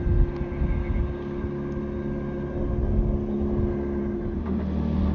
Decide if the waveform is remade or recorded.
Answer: recorded